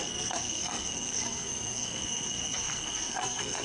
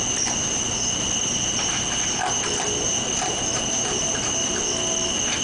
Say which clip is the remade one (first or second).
first